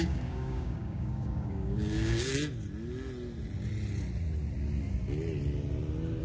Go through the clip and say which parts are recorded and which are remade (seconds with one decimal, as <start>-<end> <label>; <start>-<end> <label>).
0.0-2.3 remade; 2.3-6.2 recorded